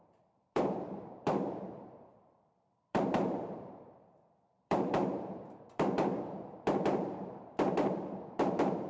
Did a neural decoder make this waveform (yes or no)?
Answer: yes